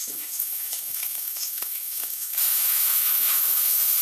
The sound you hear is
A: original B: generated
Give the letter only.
B